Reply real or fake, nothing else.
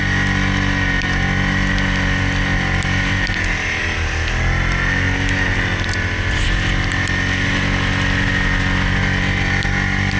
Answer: real